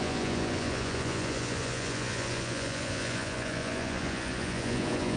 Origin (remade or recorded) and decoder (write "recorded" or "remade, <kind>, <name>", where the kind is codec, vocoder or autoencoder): remade, vocoder, Vocos